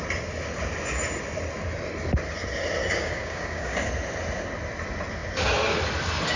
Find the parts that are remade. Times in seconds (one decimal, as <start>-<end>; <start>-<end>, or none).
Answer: 2.8-3.9